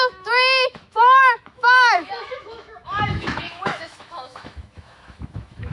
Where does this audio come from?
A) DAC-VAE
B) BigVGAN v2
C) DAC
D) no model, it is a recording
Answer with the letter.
A